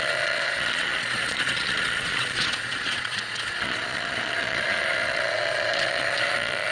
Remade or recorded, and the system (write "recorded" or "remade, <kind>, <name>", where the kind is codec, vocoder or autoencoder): remade, vocoder, Vocos